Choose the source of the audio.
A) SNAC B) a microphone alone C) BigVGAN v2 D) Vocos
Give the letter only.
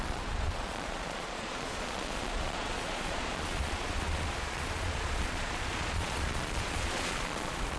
D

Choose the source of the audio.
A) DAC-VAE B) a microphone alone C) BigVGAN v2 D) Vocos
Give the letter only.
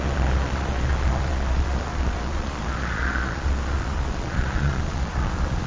D